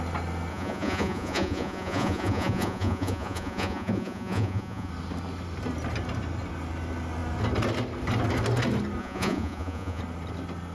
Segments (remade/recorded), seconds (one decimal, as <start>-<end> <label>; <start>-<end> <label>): 0.0-0.5 recorded; 0.5-4.9 remade; 4.9-9.0 recorded; 9.0-10.0 remade; 10.0-10.7 recorded